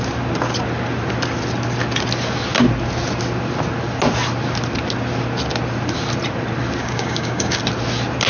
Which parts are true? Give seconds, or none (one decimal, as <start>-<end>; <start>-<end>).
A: 0.0-6.8; 7.6-8.3